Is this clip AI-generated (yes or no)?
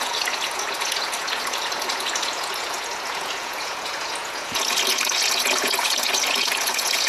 yes